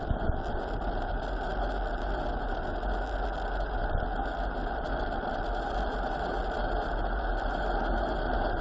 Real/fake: real